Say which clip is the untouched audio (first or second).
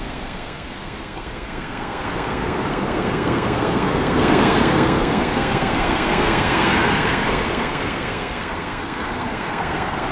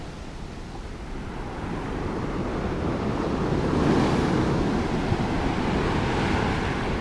second